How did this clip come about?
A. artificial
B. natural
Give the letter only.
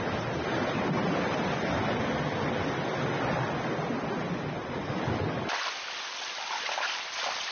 B